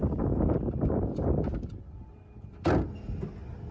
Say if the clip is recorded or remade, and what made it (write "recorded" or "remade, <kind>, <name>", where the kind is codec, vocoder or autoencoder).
recorded